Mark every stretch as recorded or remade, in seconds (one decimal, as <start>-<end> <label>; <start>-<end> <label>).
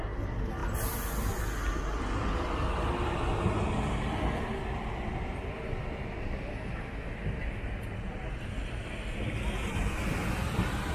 0.0-10.9 recorded